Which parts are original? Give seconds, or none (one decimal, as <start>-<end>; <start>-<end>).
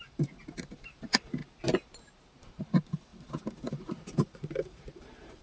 1.4-2.4